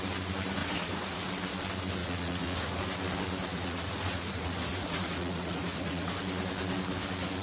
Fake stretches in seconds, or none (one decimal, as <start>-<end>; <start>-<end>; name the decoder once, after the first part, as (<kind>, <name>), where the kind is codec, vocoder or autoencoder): 0.6-1.3 (vocoder, Vocos); 2.0-2.8; 3.5-6.2